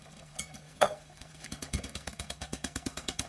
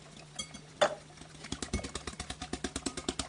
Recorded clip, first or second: second